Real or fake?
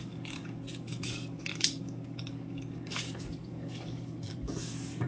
fake